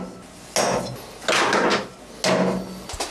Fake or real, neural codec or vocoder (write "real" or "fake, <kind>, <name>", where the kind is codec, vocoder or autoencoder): real